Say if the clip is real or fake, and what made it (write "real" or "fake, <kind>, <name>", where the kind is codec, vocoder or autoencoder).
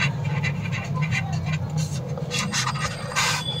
real